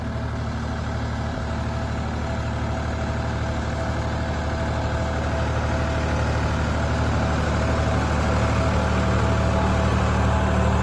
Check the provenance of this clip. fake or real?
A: real